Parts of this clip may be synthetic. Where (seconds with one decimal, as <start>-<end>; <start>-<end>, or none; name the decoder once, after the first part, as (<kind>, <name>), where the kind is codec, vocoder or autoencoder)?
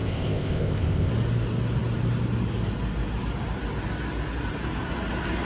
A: 0.0-1.1 (codec, ZipCodec)